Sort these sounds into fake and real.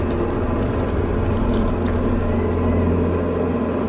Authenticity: real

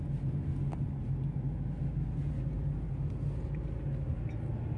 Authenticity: real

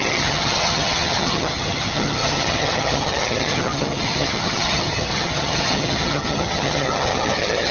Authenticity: fake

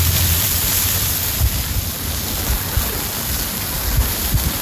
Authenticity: real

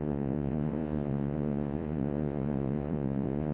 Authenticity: fake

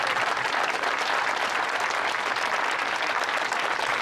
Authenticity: real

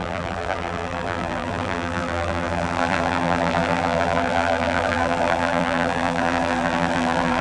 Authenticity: fake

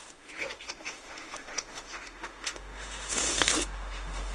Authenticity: fake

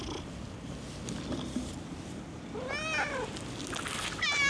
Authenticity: real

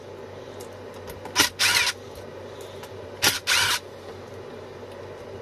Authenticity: real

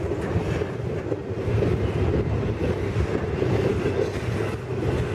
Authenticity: real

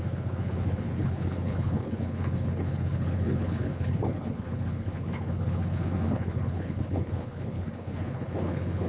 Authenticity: fake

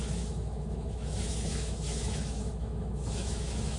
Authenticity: fake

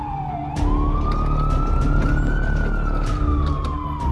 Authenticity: real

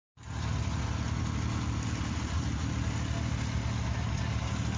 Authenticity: real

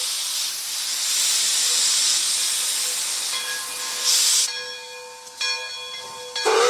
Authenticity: real